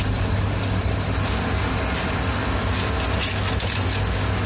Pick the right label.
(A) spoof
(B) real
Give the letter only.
B